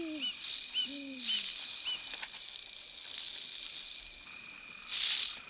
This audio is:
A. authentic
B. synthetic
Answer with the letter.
A